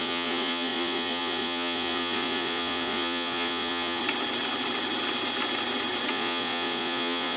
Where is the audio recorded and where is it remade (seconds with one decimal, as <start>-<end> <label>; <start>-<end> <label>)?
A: 0.0-4.0 remade; 4.0-6.1 recorded; 6.1-7.4 remade